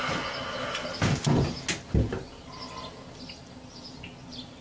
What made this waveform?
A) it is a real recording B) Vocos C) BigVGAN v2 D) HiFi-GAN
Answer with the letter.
A